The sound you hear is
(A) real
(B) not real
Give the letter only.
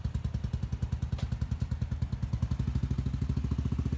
A